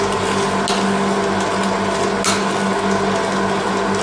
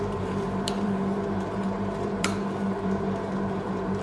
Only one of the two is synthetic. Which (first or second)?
second